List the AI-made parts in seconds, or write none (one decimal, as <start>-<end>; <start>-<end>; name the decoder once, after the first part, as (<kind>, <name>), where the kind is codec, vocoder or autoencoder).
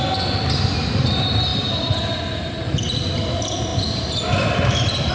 none